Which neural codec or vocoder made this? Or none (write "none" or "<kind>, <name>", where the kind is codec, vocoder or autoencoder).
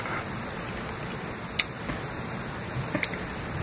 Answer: none